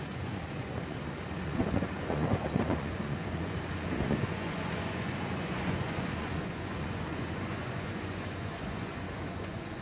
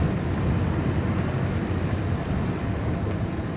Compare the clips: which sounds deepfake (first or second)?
first